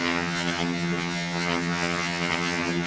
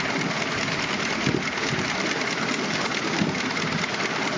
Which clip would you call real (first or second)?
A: second